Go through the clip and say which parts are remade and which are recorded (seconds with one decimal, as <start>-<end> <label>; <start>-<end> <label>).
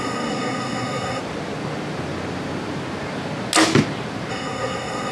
0.0-1.2 remade; 1.2-4.3 recorded; 4.3-5.1 remade